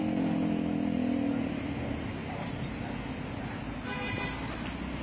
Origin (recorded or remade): recorded